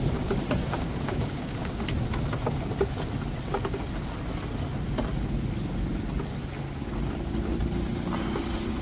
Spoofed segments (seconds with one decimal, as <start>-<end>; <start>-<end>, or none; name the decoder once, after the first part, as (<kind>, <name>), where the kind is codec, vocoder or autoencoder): 0.6-1.8 (codec, DAC)